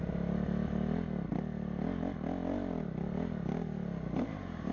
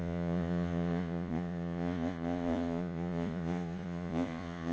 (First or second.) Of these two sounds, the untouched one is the first